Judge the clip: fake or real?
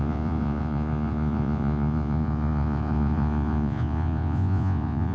fake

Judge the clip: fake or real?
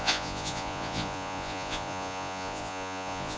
fake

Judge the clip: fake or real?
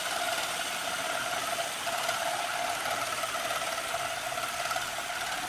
real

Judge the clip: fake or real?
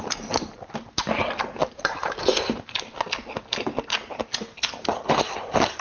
real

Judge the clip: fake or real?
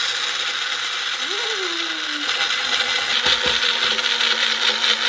real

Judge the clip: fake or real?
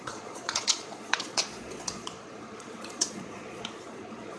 fake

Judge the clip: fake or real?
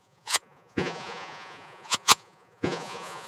fake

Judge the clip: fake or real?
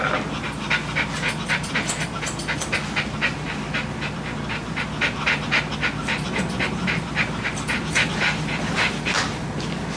real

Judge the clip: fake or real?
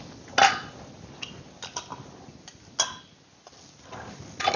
real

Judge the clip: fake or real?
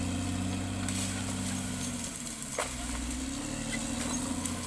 real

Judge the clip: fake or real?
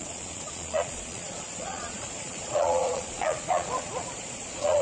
fake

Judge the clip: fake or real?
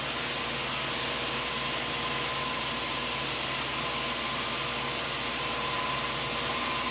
real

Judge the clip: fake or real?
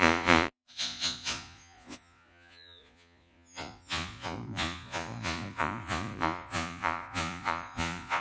fake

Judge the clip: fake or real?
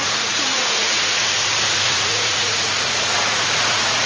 fake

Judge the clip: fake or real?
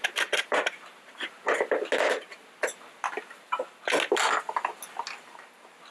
real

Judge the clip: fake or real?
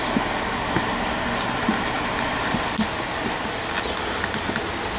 real